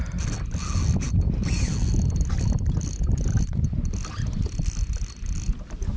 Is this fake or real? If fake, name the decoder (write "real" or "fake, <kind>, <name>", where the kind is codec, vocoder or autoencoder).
real